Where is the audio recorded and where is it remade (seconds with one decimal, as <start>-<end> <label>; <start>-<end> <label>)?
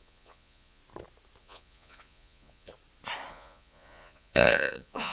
0.0-0.8 remade; 0.8-1.4 recorded; 1.4-2.7 remade; 2.7-3.3 recorded; 3.3-5.1 remade